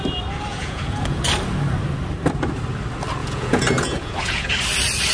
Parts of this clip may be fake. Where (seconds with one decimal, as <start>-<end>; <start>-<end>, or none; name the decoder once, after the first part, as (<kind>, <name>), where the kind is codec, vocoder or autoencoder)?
0.5-1.2 (vocoder, Vocos); 3.2-4.5